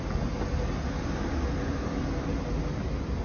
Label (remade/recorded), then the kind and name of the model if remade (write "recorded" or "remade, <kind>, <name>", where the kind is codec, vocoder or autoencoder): recorded